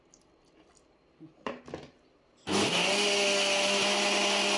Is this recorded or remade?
recorded